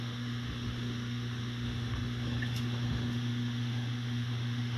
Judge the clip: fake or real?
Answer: fake